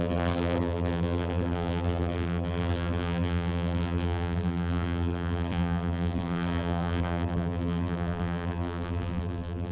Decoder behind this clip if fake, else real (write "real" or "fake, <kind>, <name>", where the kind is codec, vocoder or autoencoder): fake, vocoder, BigVGAN v2